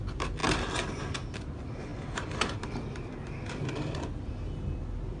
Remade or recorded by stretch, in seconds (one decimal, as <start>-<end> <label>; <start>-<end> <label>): 0.0-1.9 recorded; 1.9-2.7 remade; 2.7-5.2 recorded